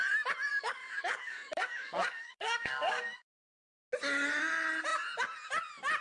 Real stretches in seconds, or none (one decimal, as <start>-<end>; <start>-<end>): 0.0-0.5; 3.5-6.0